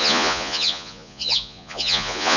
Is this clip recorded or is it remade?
remade